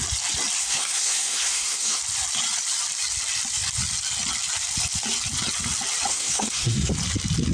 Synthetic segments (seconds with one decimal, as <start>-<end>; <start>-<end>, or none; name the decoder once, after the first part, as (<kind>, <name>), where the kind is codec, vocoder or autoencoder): 0.6-2.0 (codec, SNAC); 6.1-6.9